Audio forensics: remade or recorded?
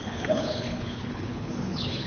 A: remade